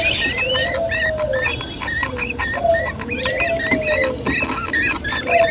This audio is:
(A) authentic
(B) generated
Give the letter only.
A